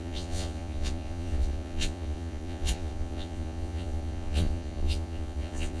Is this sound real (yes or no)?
no